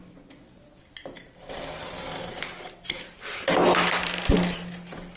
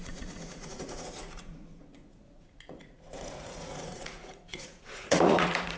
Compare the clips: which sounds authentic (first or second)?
first